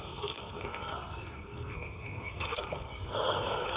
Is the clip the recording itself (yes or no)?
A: no